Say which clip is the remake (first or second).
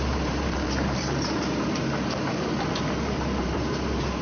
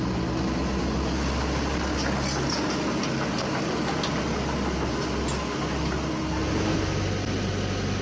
first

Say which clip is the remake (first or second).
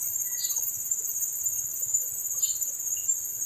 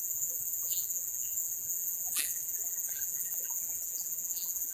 second